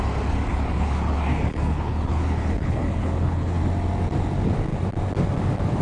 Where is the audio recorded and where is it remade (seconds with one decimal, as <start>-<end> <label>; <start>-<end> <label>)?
0.0-0.5 recorded; 0.5-3.6 remade; 3.6-5.8 recorded